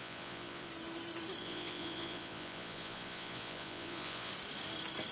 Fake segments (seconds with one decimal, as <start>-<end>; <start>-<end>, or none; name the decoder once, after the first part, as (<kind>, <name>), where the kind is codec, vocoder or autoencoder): 0.0-0.7 (vocoder, Vocos); 1.4-4.3